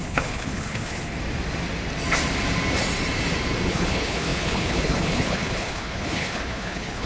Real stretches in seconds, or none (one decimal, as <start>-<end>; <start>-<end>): 1.0-3.7